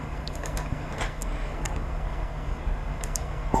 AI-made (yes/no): yes